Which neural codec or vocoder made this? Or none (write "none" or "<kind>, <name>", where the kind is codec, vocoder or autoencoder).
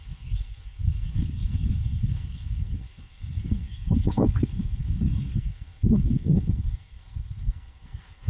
codec, SNAC